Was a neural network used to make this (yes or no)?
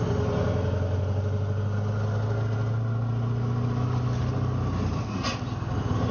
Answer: no